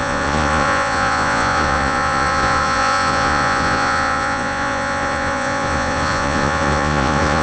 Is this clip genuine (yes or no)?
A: no